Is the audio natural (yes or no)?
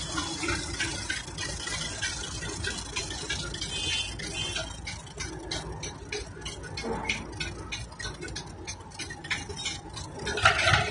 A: yes